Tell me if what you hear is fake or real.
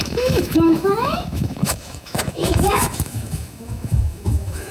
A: fake